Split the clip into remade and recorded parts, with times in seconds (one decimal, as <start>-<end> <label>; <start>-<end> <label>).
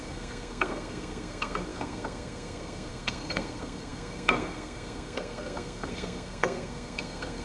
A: 0.0-7.4 remade